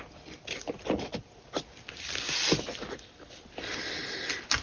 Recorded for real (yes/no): yes